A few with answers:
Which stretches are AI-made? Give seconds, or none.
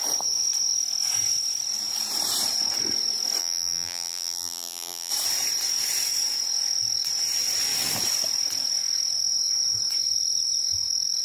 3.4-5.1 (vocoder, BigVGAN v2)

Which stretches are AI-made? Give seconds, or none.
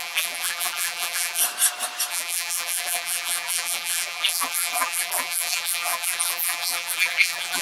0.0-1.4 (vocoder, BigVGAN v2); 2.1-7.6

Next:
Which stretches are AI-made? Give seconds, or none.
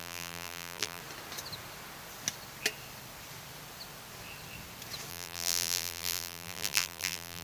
0.0-1.0 (vocoder, BigVGAN v2); 5.1-7.4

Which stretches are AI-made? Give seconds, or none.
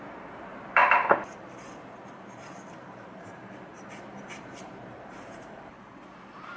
0.0-6.6 (vocoder, BigVGAN v2)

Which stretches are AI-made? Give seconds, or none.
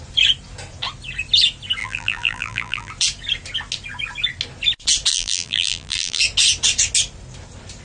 1.8-2.9 (vocoder, BigVGAN v2); 5.1-6.2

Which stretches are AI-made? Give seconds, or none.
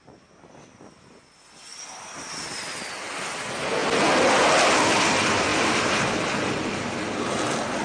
1.7-2.3 (vocoder, BigVGAN v2); 5.5-6.2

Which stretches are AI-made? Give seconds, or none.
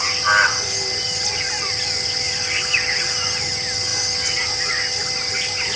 0.0-3.5 (vocoder, BigVGAN v2)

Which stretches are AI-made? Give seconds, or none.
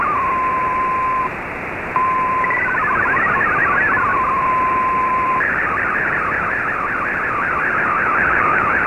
0.0-8.9 (vocoder, BigVGAN v2)